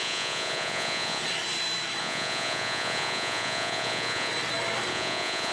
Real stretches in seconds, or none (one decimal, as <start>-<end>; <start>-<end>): 1.2-2.0; 4.3-4.9